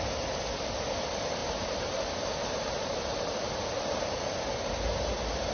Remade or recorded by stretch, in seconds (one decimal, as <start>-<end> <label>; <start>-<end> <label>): 0.0-1.4 recorded; 1.4-4.7 remade; 4.7-5.5 recorded